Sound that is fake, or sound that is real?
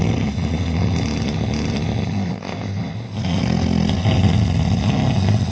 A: real